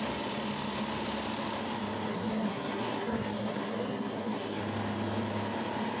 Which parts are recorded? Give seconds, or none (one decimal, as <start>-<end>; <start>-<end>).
0.0-2.1; 4.6-6.0